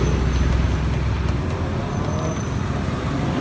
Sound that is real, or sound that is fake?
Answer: real